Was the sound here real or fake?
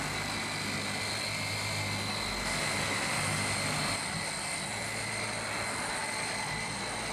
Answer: real